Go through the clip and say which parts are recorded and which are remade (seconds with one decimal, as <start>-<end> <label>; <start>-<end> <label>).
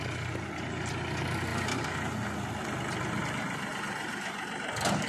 0.0-3.7 recorded; 3.7-5.1 remade